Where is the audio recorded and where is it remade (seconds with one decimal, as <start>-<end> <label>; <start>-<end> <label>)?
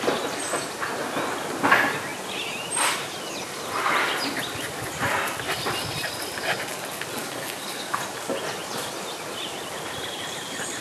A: 0.0-7.2 recorded; 7.2-8.0 remade; 8.0-10.8 recorded